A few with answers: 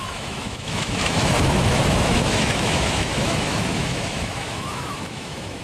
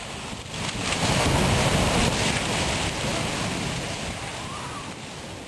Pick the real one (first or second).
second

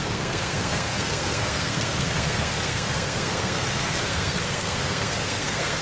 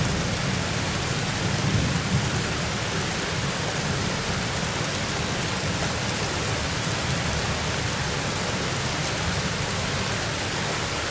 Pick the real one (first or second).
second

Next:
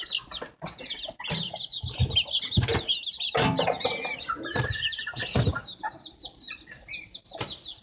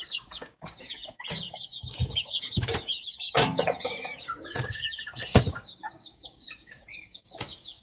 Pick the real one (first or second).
first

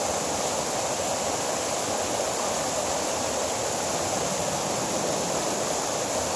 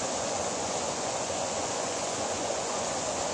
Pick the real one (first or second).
first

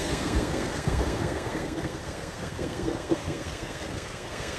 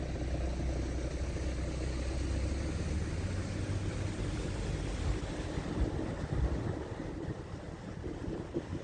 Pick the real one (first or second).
second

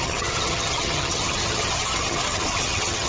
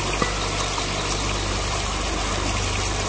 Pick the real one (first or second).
second